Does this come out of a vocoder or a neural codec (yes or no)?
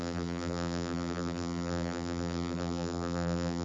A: yes